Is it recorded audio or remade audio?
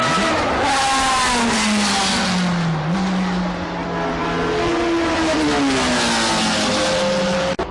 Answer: recorded